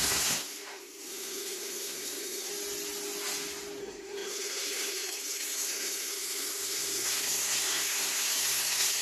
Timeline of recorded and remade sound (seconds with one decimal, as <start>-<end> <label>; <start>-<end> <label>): 0.0-2.5 remade; 2.5-3.8 recorded; 3.8-9.0 remade